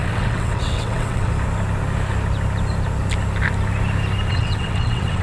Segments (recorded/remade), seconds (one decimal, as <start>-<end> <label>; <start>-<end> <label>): 0.0-1.3 remade; 1.3-4.3 recorded; 4.3-5.2 remade